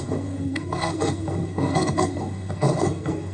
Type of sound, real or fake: fake